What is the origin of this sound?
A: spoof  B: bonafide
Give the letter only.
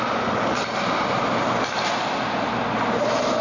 B